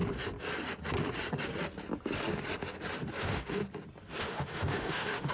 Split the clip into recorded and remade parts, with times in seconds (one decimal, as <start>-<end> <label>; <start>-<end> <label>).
0.0-3.2 recorded; 3.2-3.6 remade; 3.6-4.2 recorded; 4.2-5.3 remade